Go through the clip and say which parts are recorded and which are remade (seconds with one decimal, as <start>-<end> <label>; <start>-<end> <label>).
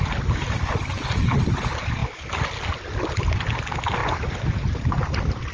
0.0-5.5 recorded